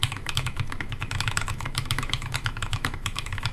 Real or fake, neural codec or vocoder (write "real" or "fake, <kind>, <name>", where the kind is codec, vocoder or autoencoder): fake, autoencoder, DAC-VAE